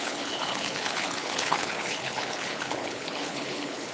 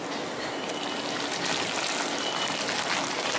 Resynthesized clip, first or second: first